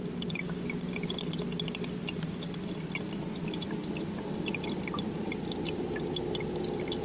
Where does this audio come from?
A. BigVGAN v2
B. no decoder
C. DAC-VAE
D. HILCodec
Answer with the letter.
B